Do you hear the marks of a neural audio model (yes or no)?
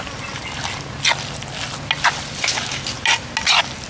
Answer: no